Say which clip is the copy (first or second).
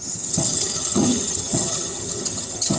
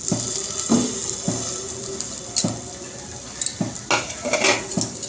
first